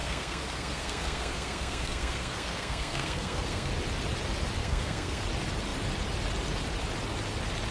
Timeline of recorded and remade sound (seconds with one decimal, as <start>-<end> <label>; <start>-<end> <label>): 0.0-3.7 remade; 3.7-4.6 recorded; 4.6-5.2 remade; 5.2-7.7 recorded